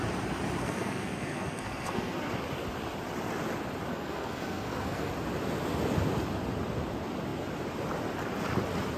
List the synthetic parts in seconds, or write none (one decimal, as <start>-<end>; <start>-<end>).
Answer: 0.6-2.3; 3.9-5.1